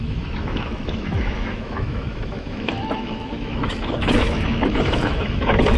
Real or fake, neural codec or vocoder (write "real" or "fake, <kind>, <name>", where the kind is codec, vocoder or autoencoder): fake, autoencoder, DAC-VAE